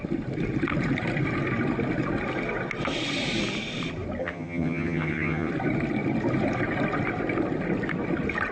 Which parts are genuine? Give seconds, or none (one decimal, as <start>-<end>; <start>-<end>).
0.0-4.2; 5.5-8.5